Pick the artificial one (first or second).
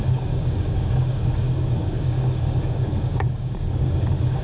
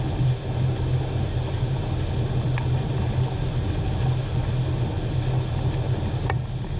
first